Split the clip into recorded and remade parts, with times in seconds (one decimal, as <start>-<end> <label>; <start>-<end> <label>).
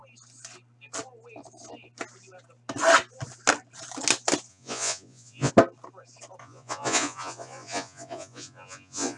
0.0-4.5 recorded; 4.5-5.5 remade; 5.5-6.4 recorded; 6.4-9.2 remade